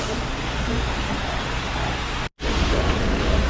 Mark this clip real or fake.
real